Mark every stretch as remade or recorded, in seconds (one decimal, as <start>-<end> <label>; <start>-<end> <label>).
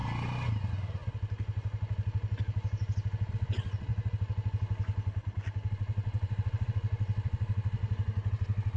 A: 0.0-3.3 recorded; 3.3-3.9 remade; 3.9-5.7 recorded; 5.7-7.8 remade; 7.8-8.3 recorded; 8.3-8.8 remade